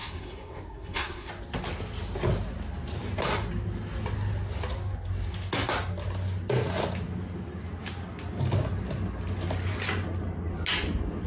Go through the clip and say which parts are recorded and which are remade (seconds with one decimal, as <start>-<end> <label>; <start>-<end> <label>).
0.0-1.3 remade; 1.3-11.3 recorded